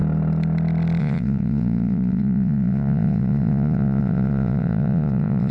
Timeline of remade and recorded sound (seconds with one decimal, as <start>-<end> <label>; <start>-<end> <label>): 0.0-1.0 recorded; 1.0-5.5 remade